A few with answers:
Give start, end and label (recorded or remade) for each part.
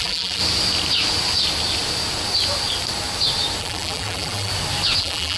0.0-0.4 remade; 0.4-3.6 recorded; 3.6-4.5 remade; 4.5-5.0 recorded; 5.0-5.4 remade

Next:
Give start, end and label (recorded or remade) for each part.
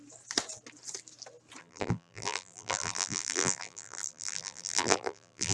0.0-1.6 recorded; 1.6-5.5 remade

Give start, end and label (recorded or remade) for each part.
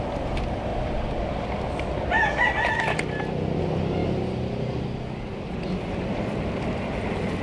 0.0-7.4 recorded